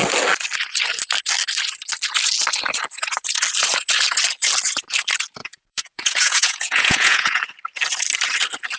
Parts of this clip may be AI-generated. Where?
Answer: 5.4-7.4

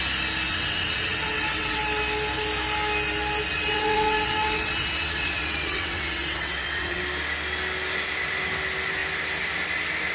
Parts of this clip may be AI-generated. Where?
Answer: 0.5-1.8; 3.5-7.0

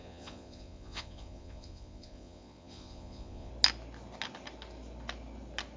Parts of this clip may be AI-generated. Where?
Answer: 0.0-3.5

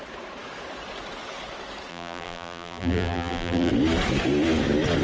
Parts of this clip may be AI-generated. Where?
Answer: 1.9-3.7